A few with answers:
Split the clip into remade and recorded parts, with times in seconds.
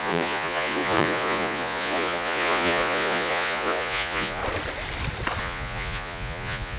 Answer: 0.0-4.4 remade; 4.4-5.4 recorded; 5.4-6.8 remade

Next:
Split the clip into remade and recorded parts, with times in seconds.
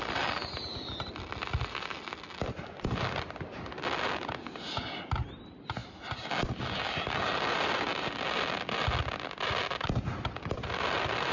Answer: 0.0-11.3 recorded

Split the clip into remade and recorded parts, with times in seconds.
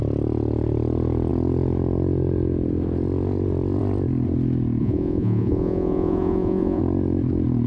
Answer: 0.0-4.8 recorded; 4.8-6.8 remade; 6.8-7.7 recorded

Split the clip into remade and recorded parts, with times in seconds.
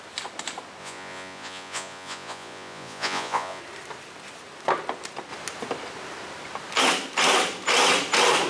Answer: 0.0-0.8 recorded; 0.8-3.6 remade; 3.6-8.5 recorded